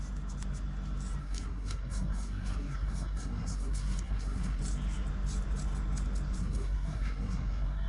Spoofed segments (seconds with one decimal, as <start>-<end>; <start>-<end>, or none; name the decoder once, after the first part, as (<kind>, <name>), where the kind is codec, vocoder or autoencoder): 1.2-4.6 (codec, SNAC); 6.4-7.9